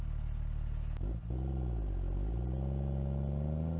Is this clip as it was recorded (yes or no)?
yes